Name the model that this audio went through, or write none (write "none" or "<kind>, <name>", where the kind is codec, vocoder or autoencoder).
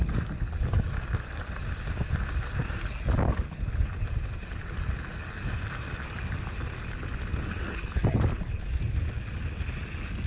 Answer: none